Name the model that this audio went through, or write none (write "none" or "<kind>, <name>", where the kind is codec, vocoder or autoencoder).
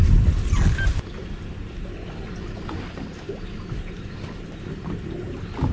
none